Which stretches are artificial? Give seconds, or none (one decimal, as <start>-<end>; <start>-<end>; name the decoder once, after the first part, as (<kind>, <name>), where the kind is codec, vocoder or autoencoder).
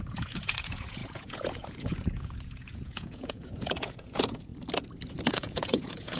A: 0.0-4.5 (vocoder, Vocos); 5.3-6.2